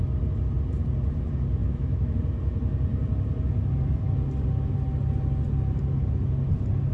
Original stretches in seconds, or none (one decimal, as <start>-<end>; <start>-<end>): 0.0-1.6; 2.1-6.9